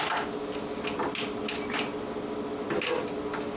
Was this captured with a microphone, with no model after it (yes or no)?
yes